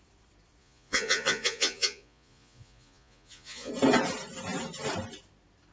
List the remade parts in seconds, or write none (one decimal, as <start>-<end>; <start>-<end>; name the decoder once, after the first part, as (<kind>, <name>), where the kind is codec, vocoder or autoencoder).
0.6-3.7 (vocoder, Vocos)